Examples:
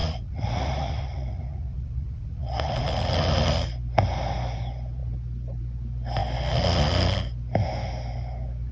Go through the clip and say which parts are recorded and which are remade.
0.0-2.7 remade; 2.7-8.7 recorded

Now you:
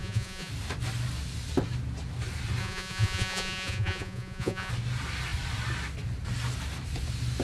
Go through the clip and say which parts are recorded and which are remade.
0.0-0.5 remade; 0.5-2.6 recorded; 2.6-4.7 remade; 4.7-7.4 recorded

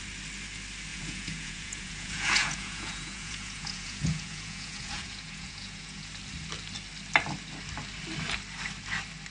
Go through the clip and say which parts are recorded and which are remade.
0.0-0.9 recorded; 0.9-6.1 remade; 6.1-9.3 recorded

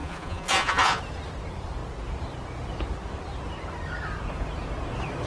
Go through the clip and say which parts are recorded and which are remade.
0.0-1.0 remade; 1.0-5.3 recorded